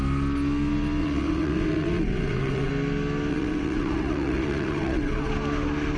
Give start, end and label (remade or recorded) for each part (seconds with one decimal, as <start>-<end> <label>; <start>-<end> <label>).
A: 0.0-1.0 recorded; 1.0-2.7 remade; 2.7-3.3 recorded; 3.3-5.3 remade; 5.3-6.0 recorded